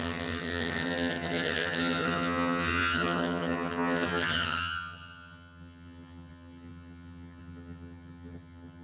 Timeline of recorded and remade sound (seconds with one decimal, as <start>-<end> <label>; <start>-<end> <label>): 0.0-8.8 remade

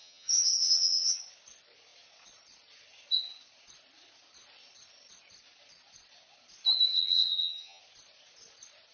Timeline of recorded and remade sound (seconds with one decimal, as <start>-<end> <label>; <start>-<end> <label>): 0.0-1.2 remade; 1.2-6.9 recorded; 6.9-7.8 remade; 7.8-8.9 recorded